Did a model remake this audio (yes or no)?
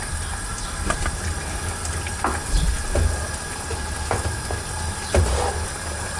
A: no